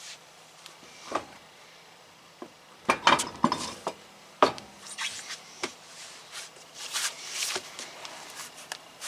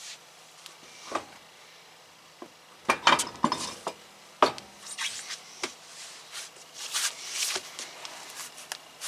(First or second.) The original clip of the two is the second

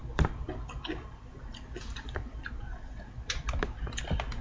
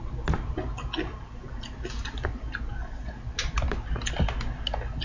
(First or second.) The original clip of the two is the second